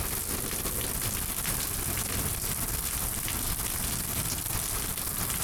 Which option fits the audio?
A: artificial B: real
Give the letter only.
B